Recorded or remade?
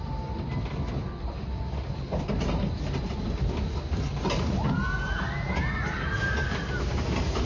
recorded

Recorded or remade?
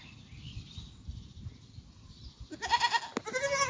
recorded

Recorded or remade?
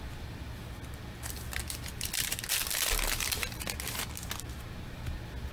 recorded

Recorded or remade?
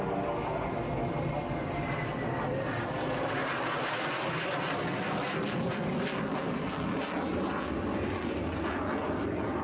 recorded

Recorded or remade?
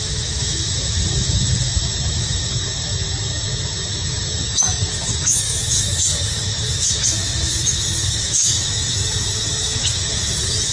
remade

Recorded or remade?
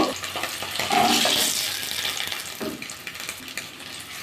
recorded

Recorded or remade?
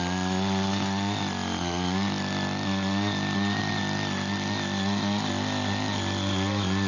recorded